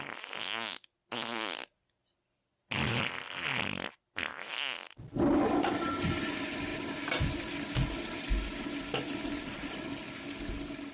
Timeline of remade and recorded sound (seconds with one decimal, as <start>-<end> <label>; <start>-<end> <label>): 0.0-10.9 recorded